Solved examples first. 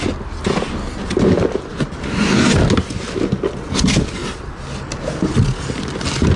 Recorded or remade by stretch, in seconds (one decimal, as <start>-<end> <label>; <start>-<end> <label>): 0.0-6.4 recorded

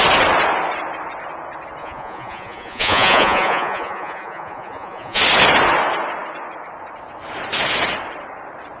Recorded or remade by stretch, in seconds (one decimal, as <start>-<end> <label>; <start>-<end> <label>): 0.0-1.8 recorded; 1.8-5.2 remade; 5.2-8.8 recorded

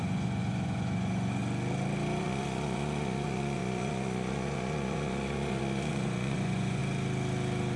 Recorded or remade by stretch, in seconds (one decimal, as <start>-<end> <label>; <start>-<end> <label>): 0.0-1.4 remade; 1.4-2.2 recorded; 2.2-6.8 remade; 6.8-7.8 recorded

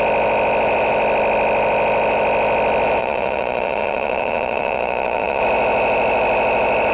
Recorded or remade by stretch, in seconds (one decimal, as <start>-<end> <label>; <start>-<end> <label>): 0.0-3.0 recorded; 3.0-5.4 remade; 5.4-6.9 recorded